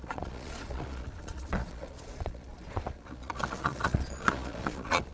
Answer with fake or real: fake